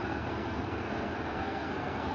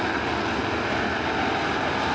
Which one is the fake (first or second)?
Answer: first